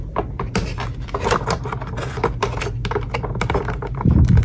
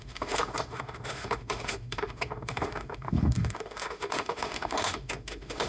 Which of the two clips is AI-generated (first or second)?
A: second